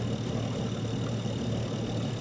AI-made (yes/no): no